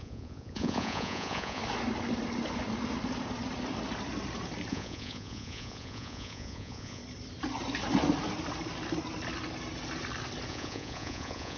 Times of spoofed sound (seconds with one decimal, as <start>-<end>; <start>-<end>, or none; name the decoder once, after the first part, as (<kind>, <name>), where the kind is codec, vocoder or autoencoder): 0.0-1.6 (vocoder, Vocos); 4.7-7.0; 10.5-11.6